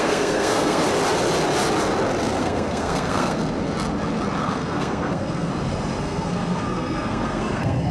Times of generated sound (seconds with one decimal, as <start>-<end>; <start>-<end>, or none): 0.0-0.8; 2.4-3.4; 4.4-5.5; 6.0-7.9